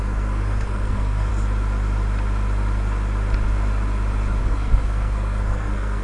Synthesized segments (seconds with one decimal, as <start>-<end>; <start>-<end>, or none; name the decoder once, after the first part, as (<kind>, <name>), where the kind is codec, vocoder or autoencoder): 0.0-1.3 (codec, SNAC); 4.4-6.0